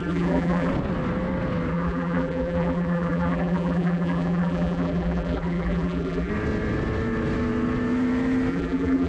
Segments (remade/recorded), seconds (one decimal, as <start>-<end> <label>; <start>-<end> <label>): 0.0-0.7 remade; 0.7-1.7 recorded; 1.7-6.3 remade; 6.3-8.5 recorded; 8.5-9.1 remade